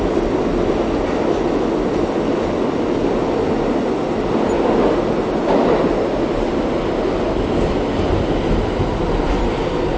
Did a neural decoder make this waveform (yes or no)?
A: no